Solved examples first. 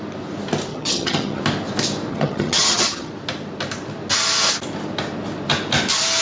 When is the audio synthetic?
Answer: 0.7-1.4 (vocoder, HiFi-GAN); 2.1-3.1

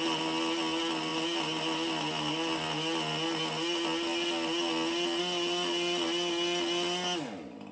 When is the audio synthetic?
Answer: none

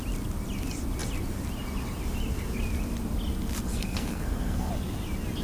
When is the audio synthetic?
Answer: 3.7-4.7 (codec, SNAC)

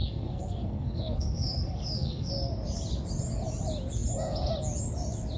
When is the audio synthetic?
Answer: 0.0-2.3 (codec, SNAC)